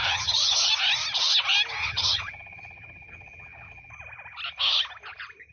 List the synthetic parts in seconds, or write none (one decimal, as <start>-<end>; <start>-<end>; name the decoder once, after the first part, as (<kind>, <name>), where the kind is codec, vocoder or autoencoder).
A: 0.0-0.7 (vocoder, HiFi-GAN); 1.8-3.9